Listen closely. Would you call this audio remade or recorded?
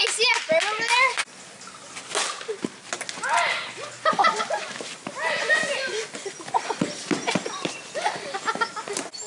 recorded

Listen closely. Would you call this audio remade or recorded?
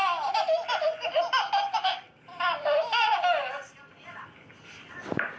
recorded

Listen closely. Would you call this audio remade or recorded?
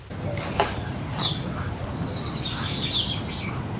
recorded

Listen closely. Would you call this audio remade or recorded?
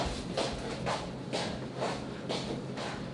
recorded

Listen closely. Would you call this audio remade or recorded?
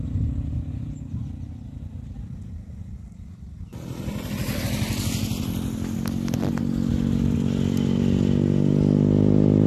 recorded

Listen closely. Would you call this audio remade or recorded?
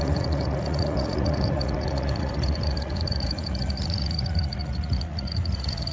remade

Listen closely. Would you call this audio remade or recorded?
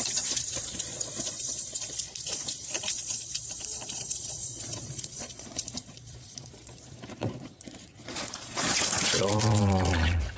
remade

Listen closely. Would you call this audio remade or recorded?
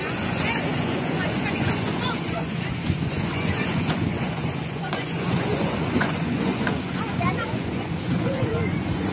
remade